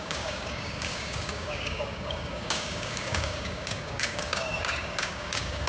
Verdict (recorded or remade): remade